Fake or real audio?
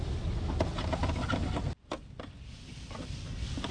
real